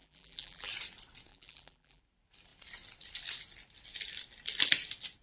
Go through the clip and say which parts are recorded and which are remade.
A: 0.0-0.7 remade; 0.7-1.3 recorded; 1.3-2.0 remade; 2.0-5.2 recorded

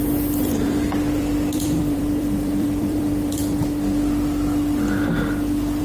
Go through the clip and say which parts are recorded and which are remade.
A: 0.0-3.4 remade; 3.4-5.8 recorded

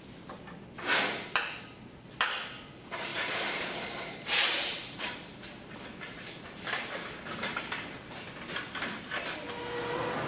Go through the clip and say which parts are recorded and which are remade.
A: 0.0-3.1 recorded; 3.1-5.1 remade; 5.1-10.3 recorded